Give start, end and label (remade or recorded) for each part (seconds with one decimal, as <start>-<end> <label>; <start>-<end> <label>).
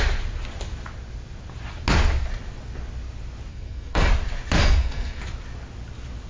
0.0-3.5 recorded; 3.5-4.1 remade; 4.1-4.6 recorded; 4.6-5.2 remade; 5.2-6.3 recorded